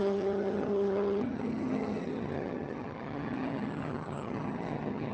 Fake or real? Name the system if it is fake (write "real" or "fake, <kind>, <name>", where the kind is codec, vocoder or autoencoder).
fake, vocoder, HiFi-GAN